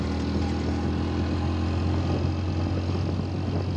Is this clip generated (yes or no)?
no